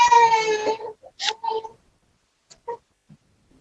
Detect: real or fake real